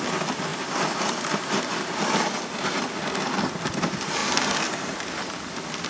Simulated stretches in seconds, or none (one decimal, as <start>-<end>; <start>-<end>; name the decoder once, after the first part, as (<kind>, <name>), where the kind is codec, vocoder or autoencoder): none